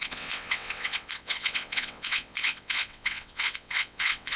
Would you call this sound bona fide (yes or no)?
no